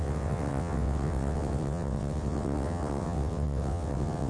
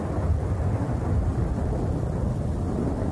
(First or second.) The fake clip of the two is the first